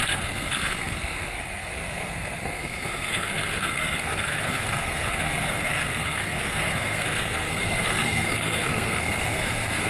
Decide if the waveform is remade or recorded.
remade